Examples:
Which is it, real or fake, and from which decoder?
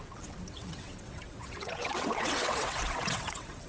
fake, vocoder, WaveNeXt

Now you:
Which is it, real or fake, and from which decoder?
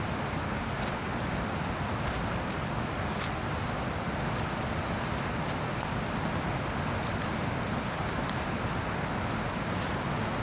real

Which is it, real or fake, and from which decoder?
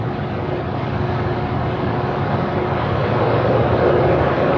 fake, codec, DAC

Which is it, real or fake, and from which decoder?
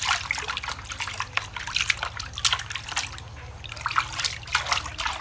real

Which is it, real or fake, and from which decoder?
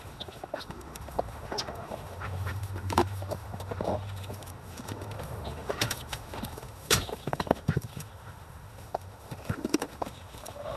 fake, autoencoder, DAC-VAE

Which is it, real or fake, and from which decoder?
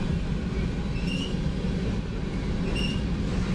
real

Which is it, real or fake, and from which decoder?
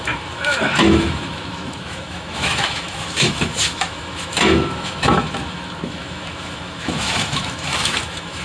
fake, autoencoder, DAC-VAE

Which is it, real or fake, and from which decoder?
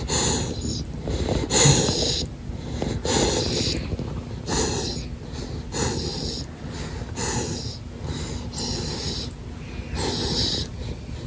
real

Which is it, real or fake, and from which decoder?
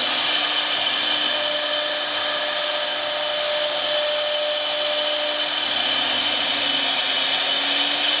real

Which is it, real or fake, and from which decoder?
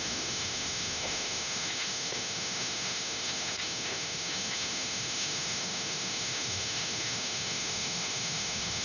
fake, autoencoder, DAC-VAE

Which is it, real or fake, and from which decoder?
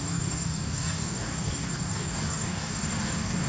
fake, codec, DAC